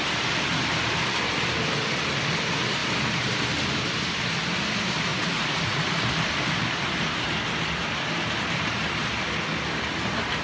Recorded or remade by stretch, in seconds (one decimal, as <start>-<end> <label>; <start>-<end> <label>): 0.0-5.1 recorded; 5.1-5.8 remade; 5.8-10.4 recorded